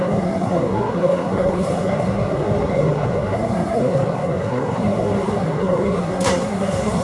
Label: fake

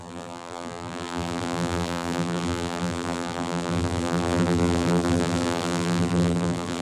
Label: fake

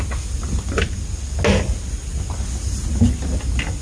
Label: real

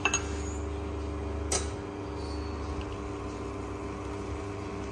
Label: real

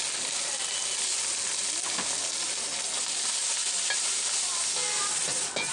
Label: real